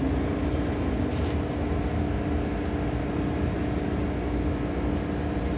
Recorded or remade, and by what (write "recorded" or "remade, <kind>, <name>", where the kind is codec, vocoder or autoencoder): recorded